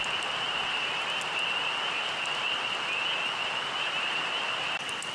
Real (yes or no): yes